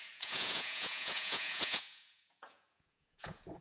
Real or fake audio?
fake